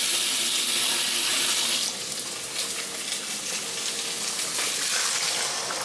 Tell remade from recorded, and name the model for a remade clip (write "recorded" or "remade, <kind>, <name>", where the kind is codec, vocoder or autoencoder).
recorded